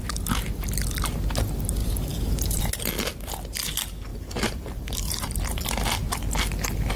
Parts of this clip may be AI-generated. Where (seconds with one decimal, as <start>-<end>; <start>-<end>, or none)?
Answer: 1.8-2.6; 4.1-5.4